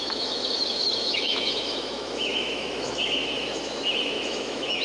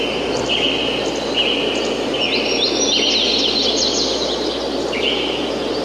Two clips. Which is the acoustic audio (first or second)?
second